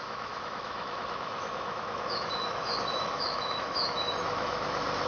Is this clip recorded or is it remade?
remade